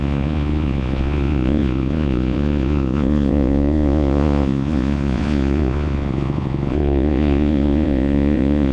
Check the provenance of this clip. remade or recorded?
remade